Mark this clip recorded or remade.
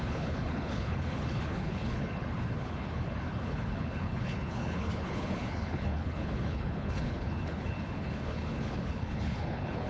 remade